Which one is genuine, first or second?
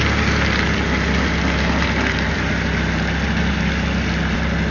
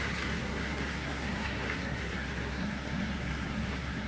first